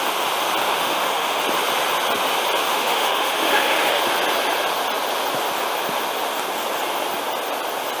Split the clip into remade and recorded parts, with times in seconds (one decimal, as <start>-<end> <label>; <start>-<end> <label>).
0.0-0.6 recorded; 0.6-1.4 remade; 1.4-2.7 recorded; 2.7-4.0 remade; 4.0-8.0 recorded